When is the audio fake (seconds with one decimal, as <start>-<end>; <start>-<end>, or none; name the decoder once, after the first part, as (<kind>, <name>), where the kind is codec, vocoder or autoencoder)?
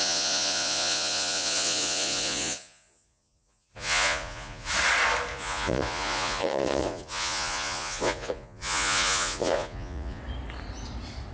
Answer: 0.0-4.7 (vocoder, Vocos); 5.3-10.2